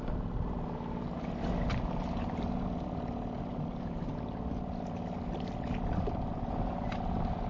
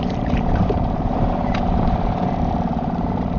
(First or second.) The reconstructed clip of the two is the second